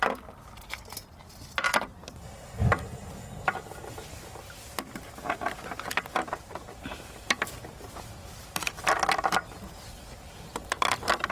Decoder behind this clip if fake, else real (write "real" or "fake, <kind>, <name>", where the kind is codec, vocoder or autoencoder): real